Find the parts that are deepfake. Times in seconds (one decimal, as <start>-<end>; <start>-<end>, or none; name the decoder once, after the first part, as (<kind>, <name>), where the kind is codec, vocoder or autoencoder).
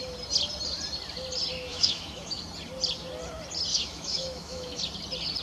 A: 1.7-2.4 (autoencoder, DAC-VAE); 3.7-4.8